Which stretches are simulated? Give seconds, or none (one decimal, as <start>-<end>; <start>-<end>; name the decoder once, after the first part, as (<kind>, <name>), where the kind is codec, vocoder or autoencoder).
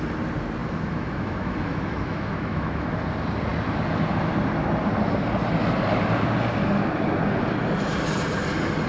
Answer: 0.6-2.9 (autoencoder, DAC-VAE)